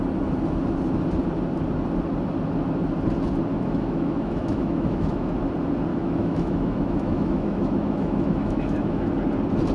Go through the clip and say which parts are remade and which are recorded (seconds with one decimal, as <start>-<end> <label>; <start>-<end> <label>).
0.0-3.5 recorded; 3.5-5.4 remade; 5.4-5.9 recorded; 5.9-9.1 remade; 9.1-9.7 recorded